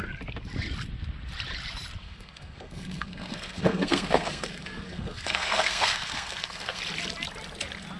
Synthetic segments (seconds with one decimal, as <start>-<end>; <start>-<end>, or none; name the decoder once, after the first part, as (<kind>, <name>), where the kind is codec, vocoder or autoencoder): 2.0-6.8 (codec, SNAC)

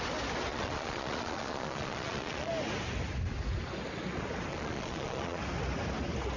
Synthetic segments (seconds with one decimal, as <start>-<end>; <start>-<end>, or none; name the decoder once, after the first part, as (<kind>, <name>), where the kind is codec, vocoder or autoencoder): 0.5-2.5 (vocoder, Vocos); 4.5-5.4

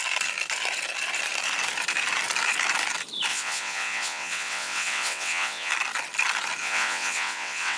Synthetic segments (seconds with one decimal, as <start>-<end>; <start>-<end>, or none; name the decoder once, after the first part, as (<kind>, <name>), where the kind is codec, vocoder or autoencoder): 3.3-5.7 (vocoder, WaveNeXt); 6.6-7.8